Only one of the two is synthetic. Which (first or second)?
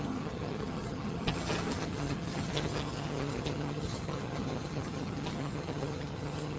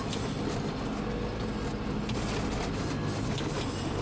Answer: first